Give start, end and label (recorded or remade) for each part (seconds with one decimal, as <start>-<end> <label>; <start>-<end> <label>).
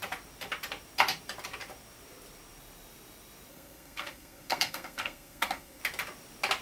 0.0-3.5 recorded; 3.5-5.8 remade; 5.8-6.6 recorded